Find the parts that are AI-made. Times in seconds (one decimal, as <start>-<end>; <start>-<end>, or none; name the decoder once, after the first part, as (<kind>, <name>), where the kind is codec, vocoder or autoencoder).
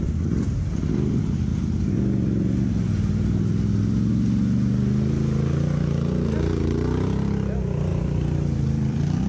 7.9-9.3 (vocoder, BigVGAN v2)